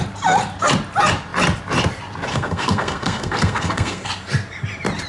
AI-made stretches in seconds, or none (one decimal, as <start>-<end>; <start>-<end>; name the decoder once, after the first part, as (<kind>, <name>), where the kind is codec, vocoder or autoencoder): 2.3-4.1 (codec, SNAC)